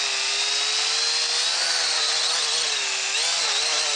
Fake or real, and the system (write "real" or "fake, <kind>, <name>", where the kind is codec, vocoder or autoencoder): real